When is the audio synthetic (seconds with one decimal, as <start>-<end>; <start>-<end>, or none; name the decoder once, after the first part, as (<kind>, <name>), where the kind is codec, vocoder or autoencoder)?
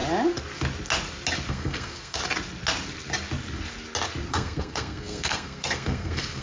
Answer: 1.5-2.2 (codec, SNAC); 4.3-6.4